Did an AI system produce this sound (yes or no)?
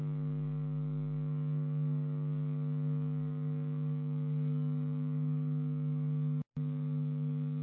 yes